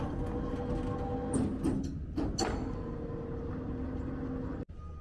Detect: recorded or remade recorded